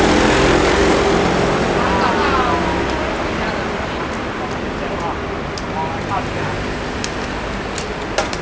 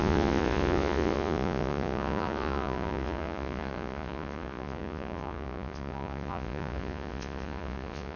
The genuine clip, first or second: first